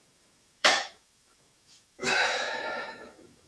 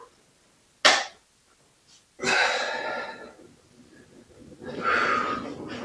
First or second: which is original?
second